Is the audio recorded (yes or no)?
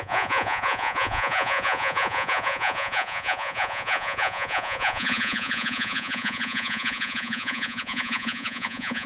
no